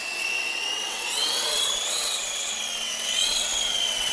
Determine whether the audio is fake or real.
fake